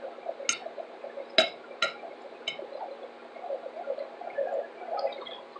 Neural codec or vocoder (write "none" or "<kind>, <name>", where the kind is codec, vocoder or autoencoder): none